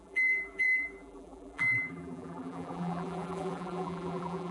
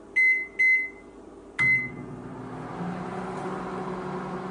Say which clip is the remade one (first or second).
first